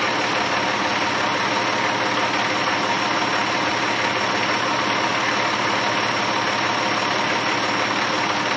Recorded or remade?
recorded